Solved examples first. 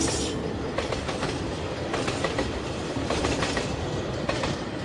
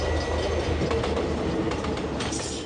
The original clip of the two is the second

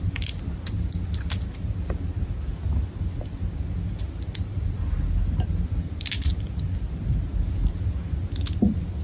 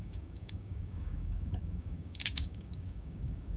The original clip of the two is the first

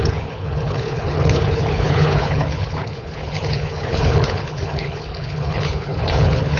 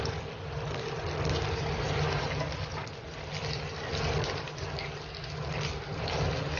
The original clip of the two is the second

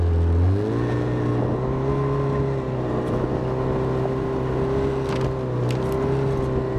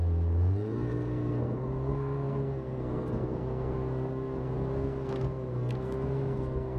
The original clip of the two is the first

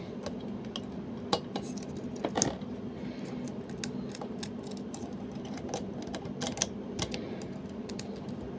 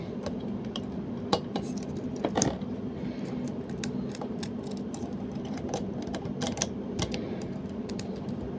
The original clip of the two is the first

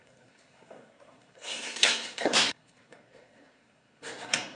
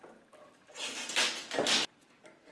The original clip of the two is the second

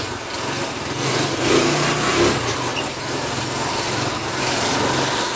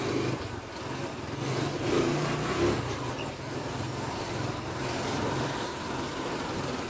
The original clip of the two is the first